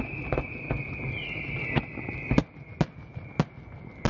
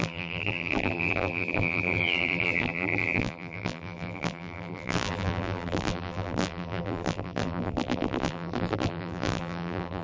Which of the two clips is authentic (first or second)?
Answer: first